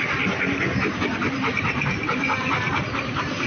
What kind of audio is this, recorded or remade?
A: recorded